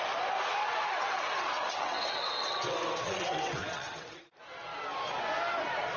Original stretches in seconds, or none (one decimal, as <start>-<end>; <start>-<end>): 0.0-0.6; 4.2-6.0